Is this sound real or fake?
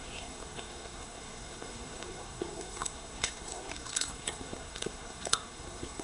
fake